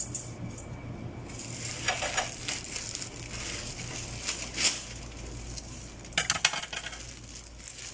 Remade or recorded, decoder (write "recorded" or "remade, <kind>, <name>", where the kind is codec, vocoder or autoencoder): recorded